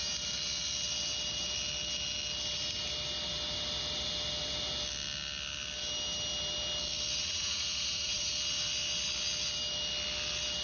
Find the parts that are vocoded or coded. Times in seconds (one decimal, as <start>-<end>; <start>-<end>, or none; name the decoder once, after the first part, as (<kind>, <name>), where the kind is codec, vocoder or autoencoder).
7.2-8.3 (vocoder, Vocos)